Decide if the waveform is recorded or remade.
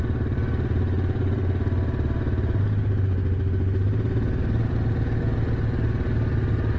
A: recorded